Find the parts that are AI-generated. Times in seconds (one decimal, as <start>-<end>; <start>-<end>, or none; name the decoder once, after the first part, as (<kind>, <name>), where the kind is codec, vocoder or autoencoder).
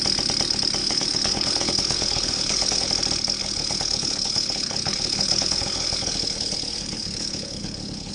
0.8-2.9 (codec, HILCodec); 3.4-8.1